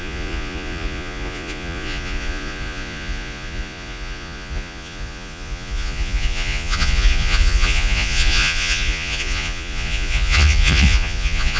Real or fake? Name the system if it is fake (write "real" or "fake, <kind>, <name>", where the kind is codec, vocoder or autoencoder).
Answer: fake, vocoder, Vocos